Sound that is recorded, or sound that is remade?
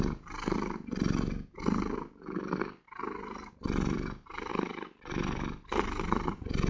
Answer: remade